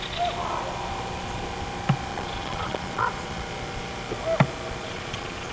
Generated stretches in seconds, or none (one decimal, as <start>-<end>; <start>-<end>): 2.1-3.5; 4.8-5.5